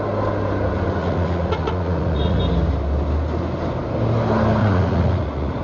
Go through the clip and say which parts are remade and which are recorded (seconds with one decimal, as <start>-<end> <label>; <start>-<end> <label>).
0.0-1.0 recorded; 1.0-2.4 remade; 2.4-4.6 recorded; 4.6-5.6 remade